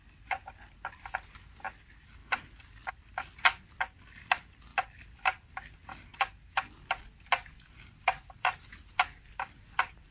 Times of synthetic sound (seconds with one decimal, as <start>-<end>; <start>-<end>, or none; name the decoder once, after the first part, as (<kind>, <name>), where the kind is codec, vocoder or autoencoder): none